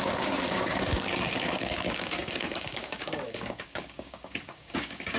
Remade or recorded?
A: remade